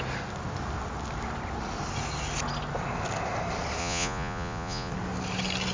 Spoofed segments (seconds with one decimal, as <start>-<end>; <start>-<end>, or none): 3.8-4.9